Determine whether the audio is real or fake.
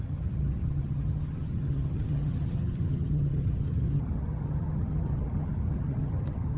fake